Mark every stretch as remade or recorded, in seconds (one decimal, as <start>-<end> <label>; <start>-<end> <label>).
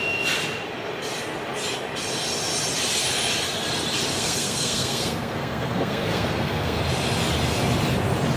0.0-4.1 recorded; 4.1-6.8 remade; 6.8-8.4 recorded